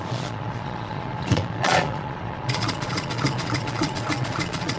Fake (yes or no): yes